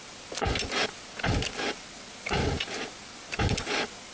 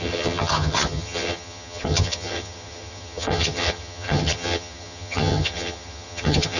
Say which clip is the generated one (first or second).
second